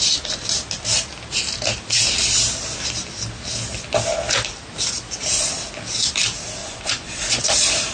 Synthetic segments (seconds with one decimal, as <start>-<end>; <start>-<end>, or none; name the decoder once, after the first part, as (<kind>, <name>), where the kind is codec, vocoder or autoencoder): 6.6-7.4 (vocoder, Vocos)